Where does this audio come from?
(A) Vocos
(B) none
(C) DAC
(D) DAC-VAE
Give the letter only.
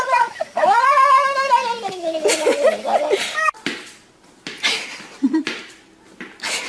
B